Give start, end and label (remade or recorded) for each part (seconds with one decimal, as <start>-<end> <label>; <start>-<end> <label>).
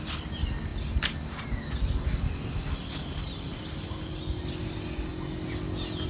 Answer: 0.0-6.1 recorded